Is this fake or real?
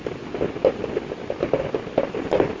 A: real